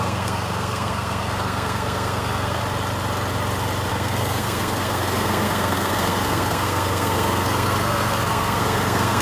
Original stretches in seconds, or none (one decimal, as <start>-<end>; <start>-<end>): 2.6-3.9